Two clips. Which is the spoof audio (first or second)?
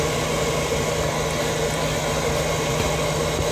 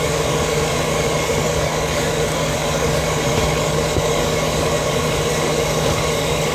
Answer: second